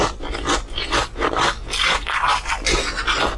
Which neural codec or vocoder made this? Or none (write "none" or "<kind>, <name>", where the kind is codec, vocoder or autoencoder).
none